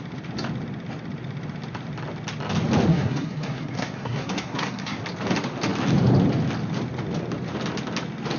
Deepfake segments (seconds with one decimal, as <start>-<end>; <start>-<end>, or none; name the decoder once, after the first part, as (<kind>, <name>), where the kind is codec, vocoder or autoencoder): 2.9-5.0 (codec, SNAC)